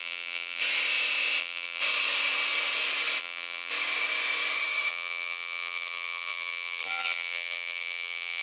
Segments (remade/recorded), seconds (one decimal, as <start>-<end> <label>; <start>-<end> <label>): 0.0-0.6 remade; 0.6-1.4 recorded; 1.4-1.8 remade; 1.8-3.2 recorded; 3.2-3.7 remade; 3.7-4.9 recorded; 4.9-8.4 remade